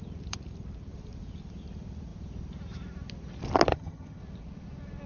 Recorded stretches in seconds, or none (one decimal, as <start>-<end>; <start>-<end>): 0.0-3.7; 4.2-5.1